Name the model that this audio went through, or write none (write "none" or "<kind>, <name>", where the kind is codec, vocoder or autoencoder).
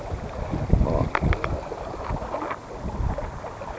none